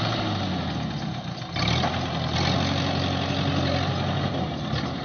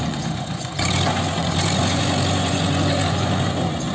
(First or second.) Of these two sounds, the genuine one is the first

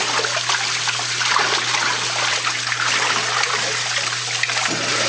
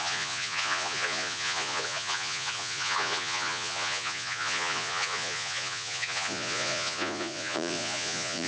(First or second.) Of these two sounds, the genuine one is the first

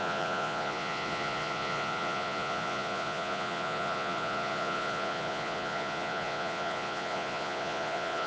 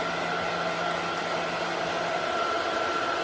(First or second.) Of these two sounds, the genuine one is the second